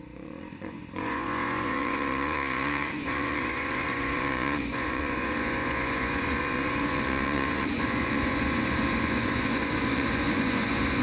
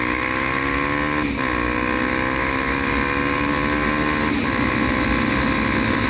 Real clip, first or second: second